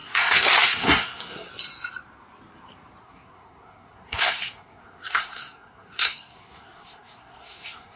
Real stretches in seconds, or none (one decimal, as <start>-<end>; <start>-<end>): 1.5-3.0